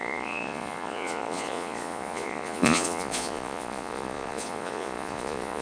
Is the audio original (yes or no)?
no